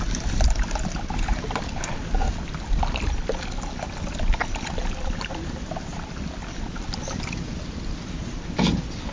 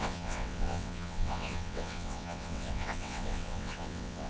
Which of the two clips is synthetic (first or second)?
second